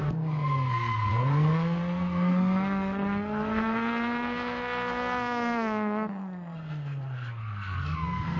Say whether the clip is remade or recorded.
remade